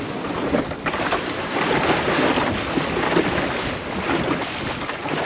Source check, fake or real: real